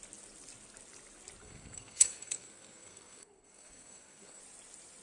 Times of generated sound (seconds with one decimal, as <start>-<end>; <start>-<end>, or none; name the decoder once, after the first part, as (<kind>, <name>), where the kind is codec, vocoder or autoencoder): 1.4-4.4 (codec, SNAC)